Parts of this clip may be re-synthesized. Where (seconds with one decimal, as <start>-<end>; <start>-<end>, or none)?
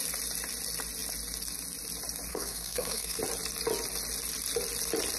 2.3-3.2